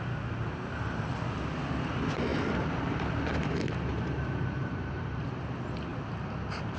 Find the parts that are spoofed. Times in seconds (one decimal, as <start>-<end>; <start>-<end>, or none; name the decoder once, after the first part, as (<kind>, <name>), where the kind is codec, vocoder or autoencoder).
2.3-2.9 (vocoder, BigVGAN v2); 3.9-5.2